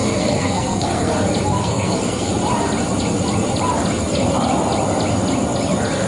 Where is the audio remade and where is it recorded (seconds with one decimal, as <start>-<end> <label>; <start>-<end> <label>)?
0.0-1.1 remade; 1.1-1.5 recorded; 1.5-2.3 remade; 2.3-6.1 recorded